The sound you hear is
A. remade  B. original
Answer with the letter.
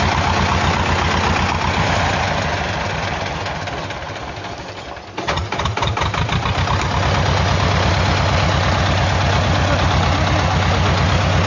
B